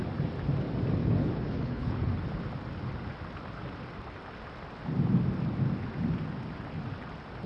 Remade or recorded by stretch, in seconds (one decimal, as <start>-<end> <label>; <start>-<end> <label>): 0.0-1.0 recorded; 1.0-2.1 remade; 2.1-7.5 recorded